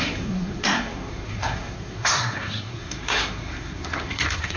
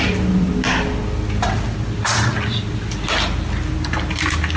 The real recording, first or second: second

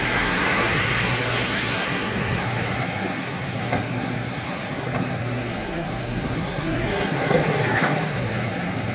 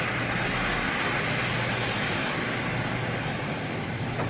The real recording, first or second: second